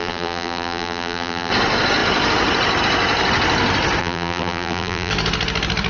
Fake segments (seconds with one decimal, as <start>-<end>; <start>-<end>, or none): 0.0-1.5; 4.0-5.1